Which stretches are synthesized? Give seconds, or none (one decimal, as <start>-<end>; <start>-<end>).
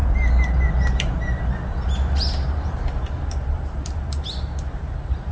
none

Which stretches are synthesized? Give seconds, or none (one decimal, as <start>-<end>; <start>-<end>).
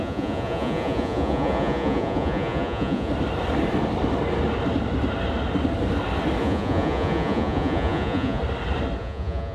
0.0-3.1; 6.4-8.4; 9.0-9.5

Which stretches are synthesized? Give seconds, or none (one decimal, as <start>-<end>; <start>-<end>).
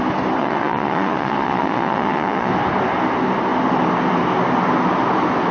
0.4-2.5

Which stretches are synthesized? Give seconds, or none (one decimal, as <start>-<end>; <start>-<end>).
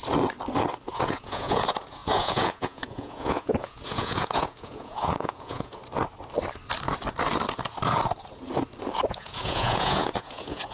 0.9-5.8; 9.1-10.7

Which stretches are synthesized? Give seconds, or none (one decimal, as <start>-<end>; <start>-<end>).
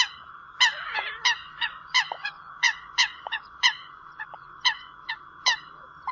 1.4-5.1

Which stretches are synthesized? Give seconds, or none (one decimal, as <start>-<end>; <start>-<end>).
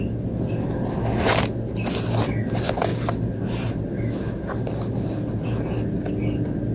none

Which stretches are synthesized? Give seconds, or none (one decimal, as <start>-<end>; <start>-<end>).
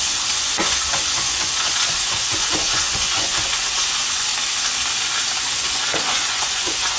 0.0-4.3; 5.4-7.0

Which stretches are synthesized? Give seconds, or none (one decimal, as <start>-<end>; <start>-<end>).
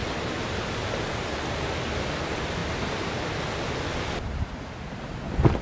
none